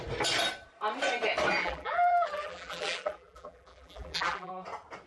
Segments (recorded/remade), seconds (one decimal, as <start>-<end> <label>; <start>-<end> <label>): 0.0-1.6 recorded; 1.6-4.5 remade; 4.5-5.1 recorded